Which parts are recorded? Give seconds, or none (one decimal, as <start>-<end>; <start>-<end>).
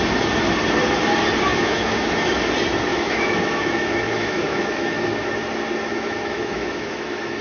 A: 0.0-1.5; 2.4-2.9; 5.3-5.9